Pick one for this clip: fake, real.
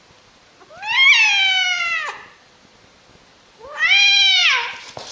real